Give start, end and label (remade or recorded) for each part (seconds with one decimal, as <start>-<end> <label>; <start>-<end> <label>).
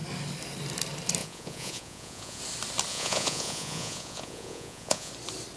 0.0-1.2 recorded; 1.2-2.4 remade; 2.4-2.9 recorded; 2.9-5.1 remade; 5.1-5.6 recorded